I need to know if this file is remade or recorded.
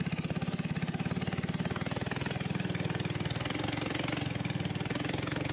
recorded